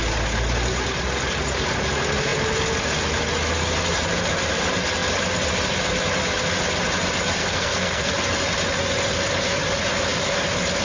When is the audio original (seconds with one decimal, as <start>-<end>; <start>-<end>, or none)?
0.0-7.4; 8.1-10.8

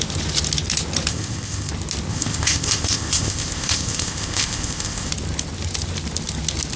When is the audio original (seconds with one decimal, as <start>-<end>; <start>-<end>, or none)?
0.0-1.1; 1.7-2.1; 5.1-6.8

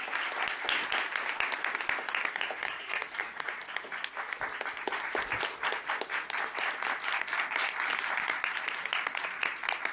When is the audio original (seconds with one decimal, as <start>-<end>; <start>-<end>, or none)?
0.0-2.6; 3.2-9.9

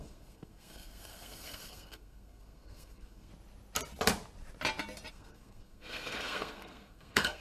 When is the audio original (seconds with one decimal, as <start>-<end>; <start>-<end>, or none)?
3.3-5.1

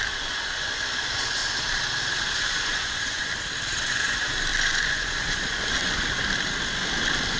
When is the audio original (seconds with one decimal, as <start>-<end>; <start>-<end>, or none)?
1.4-2.4; 3.3-3.9; 6.2-7.4

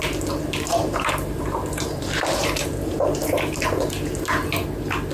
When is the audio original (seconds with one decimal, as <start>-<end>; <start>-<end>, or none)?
0.0-0.7; 3.8-5.1